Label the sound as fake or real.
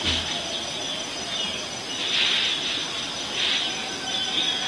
real